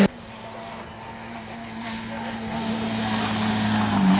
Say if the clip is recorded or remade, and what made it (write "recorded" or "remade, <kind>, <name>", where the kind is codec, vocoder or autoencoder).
recorded